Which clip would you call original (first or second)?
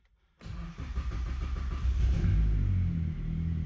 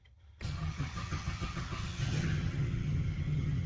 first